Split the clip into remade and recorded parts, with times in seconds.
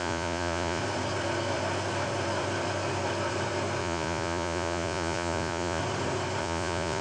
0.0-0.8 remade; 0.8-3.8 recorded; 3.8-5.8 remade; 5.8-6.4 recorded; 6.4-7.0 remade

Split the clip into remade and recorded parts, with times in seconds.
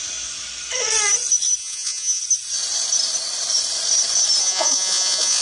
0.0-1.6 recorded; 1.6-2.2 remade; 2.2-4.4 recorded; 4.4-5.4 remade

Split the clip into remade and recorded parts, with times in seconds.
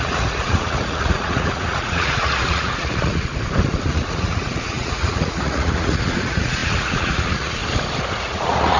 0.0-3.3 remade; 3.3-3.9 recorded; 3.9-7.6 remade; 7.6-8.2 recorded; 8.2-8.8 remade